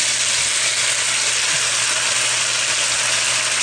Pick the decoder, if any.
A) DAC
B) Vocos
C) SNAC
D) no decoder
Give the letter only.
D